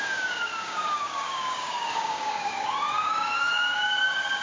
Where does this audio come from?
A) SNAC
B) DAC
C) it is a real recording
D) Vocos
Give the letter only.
B